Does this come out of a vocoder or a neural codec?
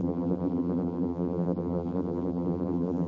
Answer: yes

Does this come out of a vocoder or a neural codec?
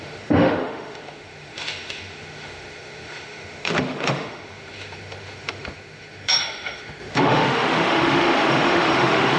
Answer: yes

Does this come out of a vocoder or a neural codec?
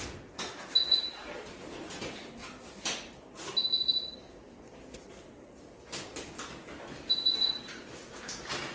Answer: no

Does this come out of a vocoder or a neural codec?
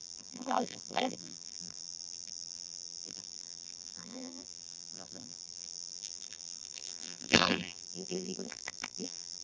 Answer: yes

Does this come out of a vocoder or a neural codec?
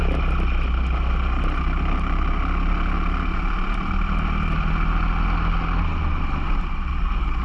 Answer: no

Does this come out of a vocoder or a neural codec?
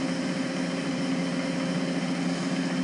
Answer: no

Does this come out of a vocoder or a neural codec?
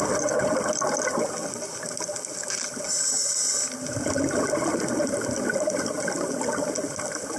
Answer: no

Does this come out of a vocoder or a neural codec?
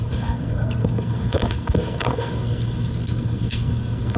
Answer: yes